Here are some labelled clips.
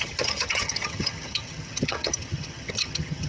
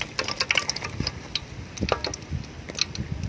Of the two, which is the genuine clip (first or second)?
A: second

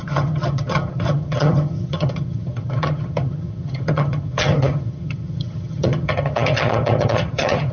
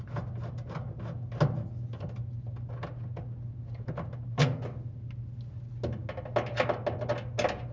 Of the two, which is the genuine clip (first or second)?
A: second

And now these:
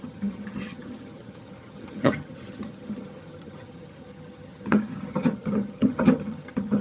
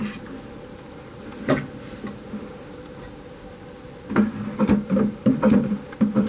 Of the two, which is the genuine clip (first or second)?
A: second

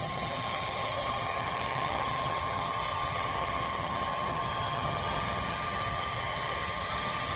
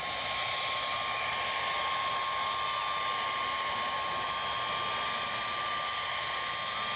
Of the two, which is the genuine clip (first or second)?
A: second